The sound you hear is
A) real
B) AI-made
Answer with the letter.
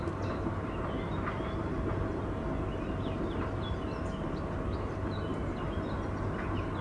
A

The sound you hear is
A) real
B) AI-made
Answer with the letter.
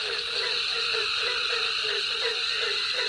A